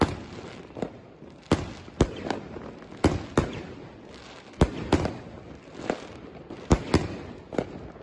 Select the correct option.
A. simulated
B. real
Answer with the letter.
B